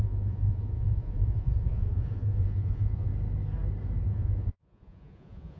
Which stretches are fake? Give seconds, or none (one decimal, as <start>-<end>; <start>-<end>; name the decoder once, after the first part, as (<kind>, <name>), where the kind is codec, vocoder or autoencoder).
0.0-3.1 (vocoder, Vocos); 4.0-5.6